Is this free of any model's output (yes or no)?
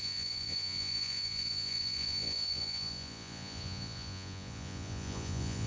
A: no